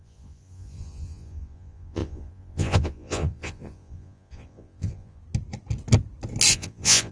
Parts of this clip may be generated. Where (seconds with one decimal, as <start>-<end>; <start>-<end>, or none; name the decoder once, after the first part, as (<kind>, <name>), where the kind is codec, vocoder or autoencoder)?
0.0-5.2 (vocoder, Vocos); 6.5-7.1